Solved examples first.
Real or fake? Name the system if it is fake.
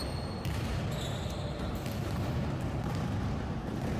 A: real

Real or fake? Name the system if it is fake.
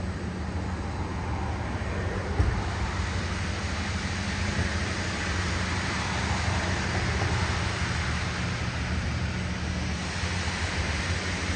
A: real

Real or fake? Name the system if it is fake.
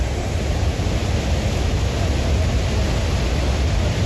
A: real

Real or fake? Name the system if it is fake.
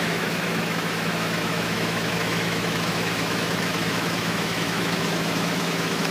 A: fake, autoencoder, DAC-VAE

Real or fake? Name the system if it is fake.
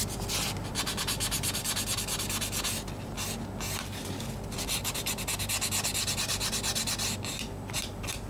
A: real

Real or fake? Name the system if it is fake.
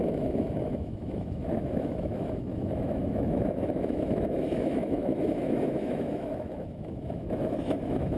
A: fake, autoencoder, DAC-VAE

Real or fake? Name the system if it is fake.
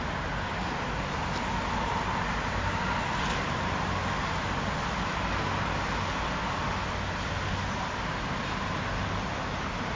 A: real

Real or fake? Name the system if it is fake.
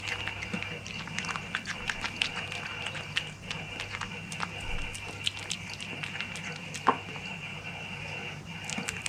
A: real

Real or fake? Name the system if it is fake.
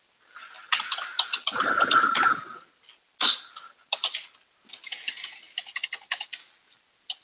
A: real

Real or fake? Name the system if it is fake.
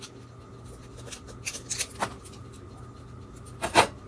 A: real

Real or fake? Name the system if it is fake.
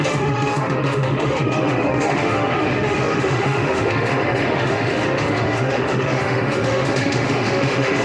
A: fake, autoencoder, DAC-VAE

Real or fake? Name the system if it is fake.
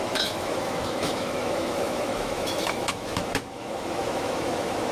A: fake, autoencoder, DAC-VAE